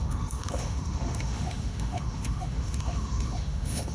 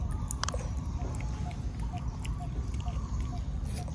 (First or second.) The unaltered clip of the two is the second